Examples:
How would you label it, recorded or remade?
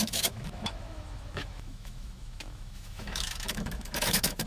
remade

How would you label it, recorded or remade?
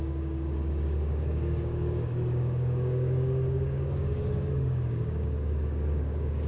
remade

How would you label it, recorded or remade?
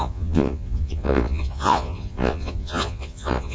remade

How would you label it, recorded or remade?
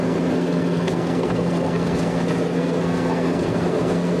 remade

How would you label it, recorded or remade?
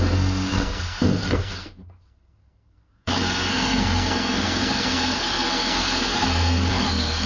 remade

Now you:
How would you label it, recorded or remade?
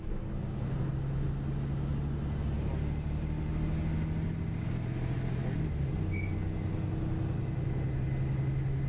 recorded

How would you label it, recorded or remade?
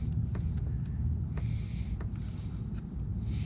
recorded